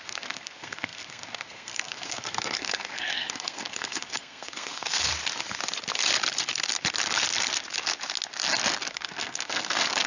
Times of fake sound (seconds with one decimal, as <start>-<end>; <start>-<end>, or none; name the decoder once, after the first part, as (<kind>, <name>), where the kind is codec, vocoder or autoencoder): 0.0-5.1 (codec, SNAC); 8.9-10.1